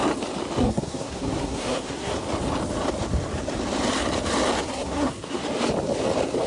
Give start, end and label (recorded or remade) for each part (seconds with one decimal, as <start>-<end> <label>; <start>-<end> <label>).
0.0-0.6 recorded; 0.6-2.1 remade; 2.1-4.7 recorded; 4.7-5.4 remade; 5.4-6.5 recorded